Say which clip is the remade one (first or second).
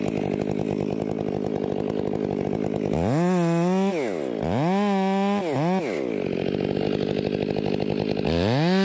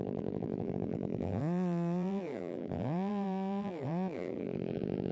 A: second